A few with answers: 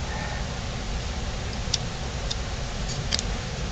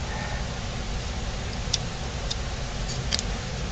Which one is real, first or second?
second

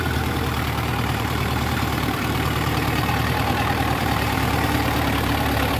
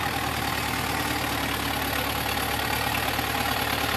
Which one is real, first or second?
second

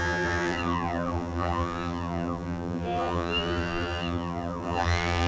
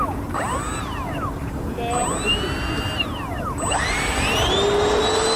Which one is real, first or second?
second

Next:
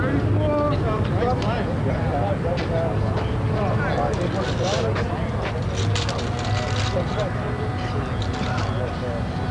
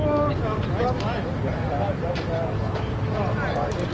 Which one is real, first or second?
first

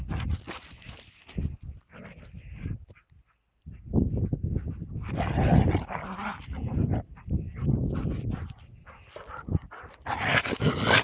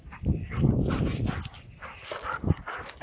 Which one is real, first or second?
first